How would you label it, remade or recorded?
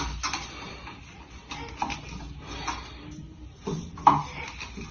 recorded